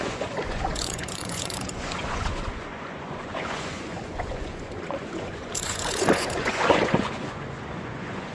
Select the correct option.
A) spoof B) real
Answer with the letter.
A